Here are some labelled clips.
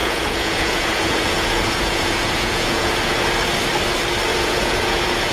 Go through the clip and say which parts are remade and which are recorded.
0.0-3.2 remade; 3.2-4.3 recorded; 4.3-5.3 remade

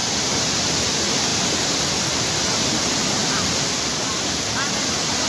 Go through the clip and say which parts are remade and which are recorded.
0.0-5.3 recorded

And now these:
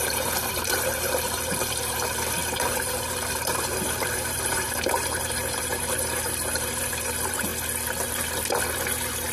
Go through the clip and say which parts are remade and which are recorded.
0.0-7.5 remade; 7.5-8.8 recorded; 8.8-9.3 remade

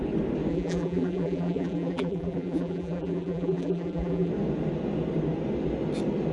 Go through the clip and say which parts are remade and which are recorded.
0.0-0.5 recorded; 0.5-4.3 remade; 4.3-6.3 recorded